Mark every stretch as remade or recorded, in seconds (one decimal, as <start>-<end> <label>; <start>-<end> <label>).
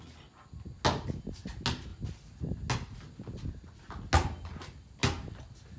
0.0-5.8 recorded